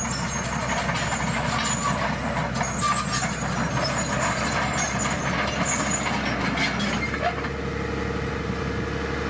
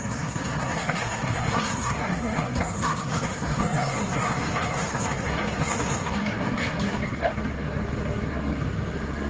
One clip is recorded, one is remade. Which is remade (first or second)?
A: second